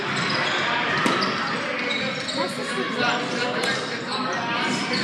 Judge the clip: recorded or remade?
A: recorded